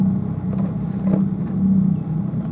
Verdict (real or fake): real